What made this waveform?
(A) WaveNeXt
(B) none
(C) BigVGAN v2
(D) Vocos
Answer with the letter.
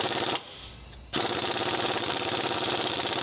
B